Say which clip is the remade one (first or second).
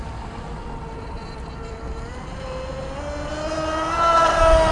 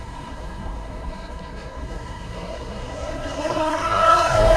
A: second